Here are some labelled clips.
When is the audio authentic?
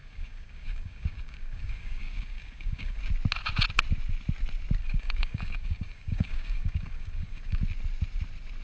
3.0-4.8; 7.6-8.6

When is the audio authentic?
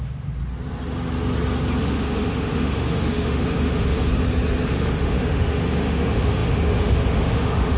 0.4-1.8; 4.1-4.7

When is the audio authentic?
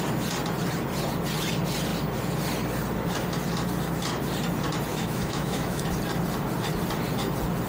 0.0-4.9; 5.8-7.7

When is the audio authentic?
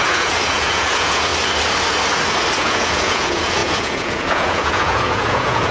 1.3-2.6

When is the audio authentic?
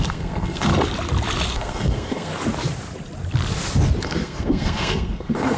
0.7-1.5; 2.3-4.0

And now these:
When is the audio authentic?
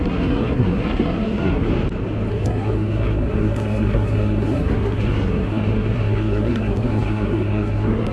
1.7-2.3